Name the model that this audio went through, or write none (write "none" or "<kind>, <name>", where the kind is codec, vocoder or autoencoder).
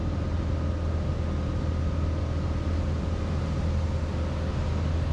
none